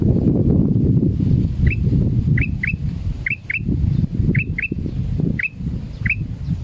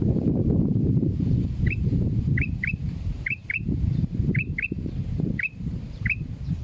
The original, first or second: first